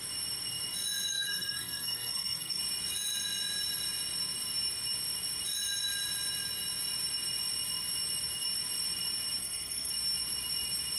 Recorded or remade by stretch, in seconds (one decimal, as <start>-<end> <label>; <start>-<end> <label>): 0.0-1.1 recorded; 1.1-2.6 remade; 2.6-9.4 recorded; 9.4-9.9 remade; 9.9-11.0 recorded